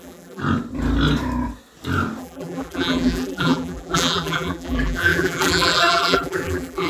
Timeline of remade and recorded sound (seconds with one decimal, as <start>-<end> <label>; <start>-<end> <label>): 0.0-0.4 remade; 0.4-2.2 recorded; 2.2-6.9 remade